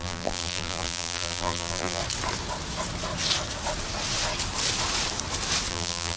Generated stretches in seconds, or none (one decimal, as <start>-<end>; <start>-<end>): 0.0-2.0; 5.7-6.2